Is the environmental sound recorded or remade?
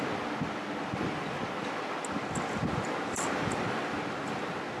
recorded